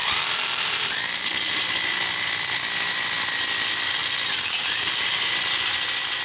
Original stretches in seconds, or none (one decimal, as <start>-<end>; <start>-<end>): 1.6-4.0; 4.9-6.2

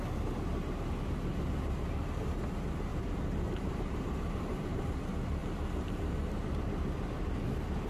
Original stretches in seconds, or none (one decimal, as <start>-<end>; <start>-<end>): 0.0-2.9; 4.8-7.9

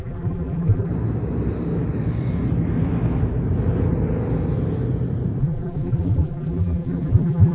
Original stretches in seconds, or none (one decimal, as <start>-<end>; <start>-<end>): 0.9-5.4

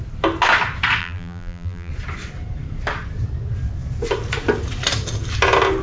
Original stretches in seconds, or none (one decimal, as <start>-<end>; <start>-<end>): 0.0-1.0; 1.9-5.8

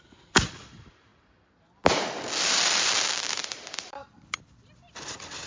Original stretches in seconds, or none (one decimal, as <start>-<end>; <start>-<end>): 1.1-3.5

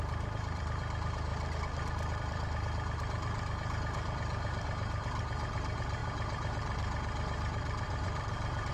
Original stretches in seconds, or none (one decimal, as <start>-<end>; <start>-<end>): 1.3-2.2

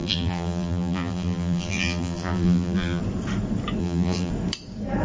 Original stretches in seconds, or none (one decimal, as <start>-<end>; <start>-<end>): 3.0-3.8; 4.3-5.0

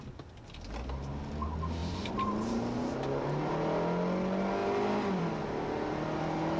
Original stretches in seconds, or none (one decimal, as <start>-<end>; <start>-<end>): 0.0-1.8; 3.5-6.6